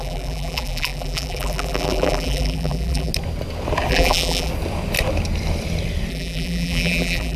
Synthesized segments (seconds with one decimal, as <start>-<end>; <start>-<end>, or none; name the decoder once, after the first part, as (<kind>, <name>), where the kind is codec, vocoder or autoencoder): 0.0-3.1 (vocoder, BigVGAN v2); 3.9-4.5; 6.1-7.4